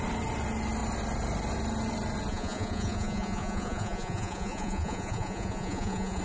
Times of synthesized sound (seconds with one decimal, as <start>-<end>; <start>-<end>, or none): 2.3-6.2